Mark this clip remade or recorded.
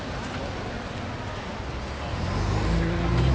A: recorded